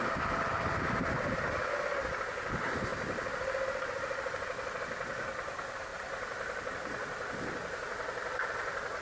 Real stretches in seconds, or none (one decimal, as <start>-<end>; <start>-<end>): 0.0-9.0